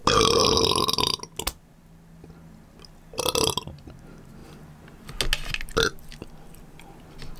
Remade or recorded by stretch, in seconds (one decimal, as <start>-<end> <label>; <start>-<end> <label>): 0.0-7.4 recorded